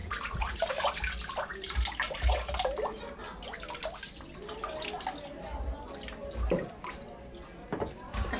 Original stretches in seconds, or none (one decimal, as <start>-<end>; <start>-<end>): 0.7-8.4